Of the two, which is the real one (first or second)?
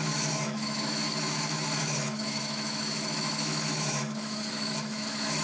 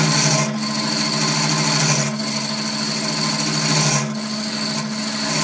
second